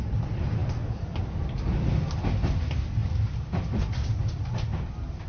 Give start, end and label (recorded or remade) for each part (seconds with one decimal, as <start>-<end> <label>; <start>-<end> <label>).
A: 0.0-0.6 recorded; 0.6-2.0 remade; 2.0-3.0 recorded; 3.0-4.5 remade; 4.5-5.3 recorded